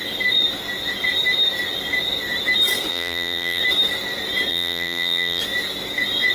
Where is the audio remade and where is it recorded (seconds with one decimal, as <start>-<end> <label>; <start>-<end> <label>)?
0.0-2.9 recorded; 2.9-3.6 remade; 3.6-4.5 recorded; 4.5-5.4 remade; 5.4-6.3 recorded